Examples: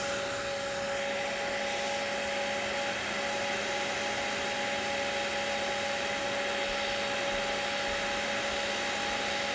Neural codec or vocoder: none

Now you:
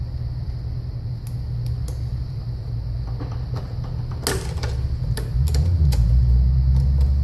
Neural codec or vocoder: none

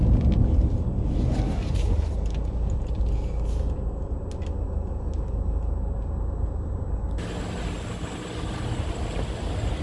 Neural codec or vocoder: none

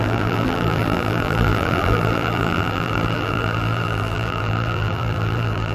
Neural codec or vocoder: vocoder, BigVGAN v2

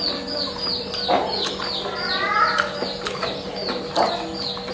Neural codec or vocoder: none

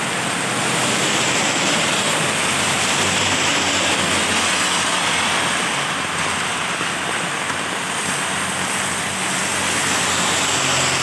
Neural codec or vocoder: none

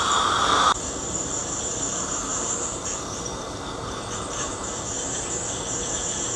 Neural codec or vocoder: vocoder, BigVGAN v2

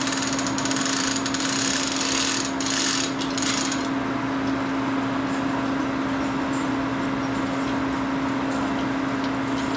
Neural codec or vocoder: none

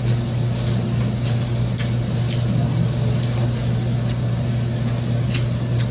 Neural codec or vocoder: none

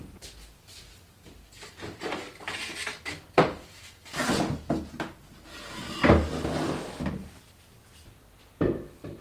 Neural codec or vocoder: none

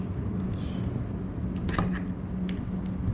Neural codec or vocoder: none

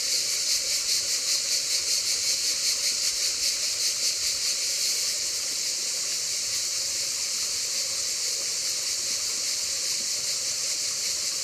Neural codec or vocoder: none